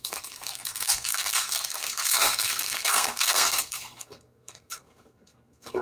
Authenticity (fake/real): fake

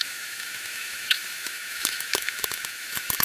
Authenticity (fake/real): fake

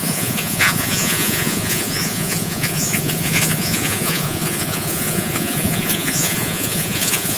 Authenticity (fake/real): fake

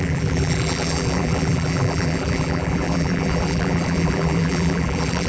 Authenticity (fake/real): fake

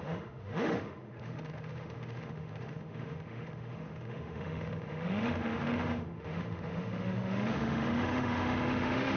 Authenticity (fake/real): fake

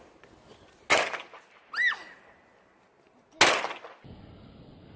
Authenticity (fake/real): real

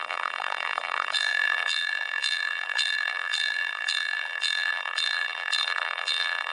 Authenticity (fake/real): fake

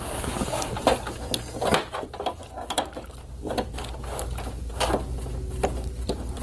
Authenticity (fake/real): real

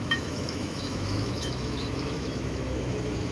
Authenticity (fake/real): fake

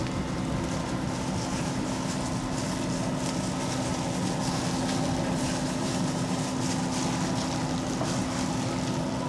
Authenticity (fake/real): real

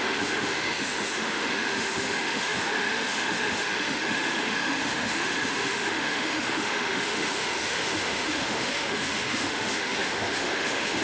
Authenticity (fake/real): fake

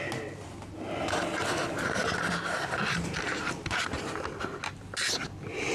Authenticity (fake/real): real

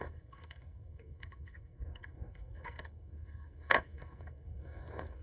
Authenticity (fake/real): fake